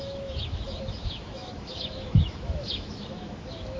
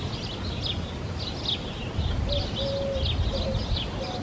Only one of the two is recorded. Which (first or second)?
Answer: second